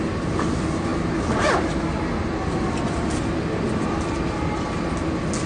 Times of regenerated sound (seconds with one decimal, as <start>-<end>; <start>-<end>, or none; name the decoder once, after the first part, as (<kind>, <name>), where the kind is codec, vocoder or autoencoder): none